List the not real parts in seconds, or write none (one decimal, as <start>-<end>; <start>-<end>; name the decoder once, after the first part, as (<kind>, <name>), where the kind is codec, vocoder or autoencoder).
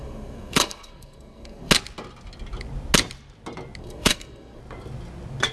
0.0-1.7 (codec, SNAC); 3.8-4.6